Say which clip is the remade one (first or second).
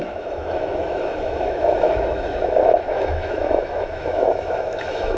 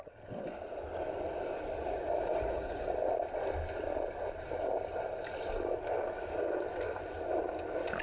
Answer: first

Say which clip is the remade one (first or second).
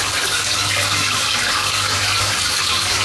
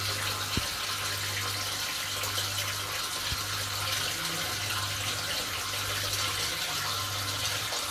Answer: first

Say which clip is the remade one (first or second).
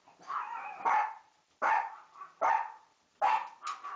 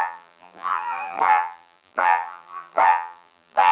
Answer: second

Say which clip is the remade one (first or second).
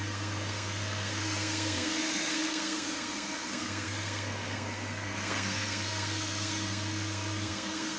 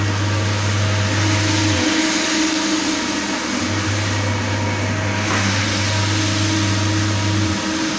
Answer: first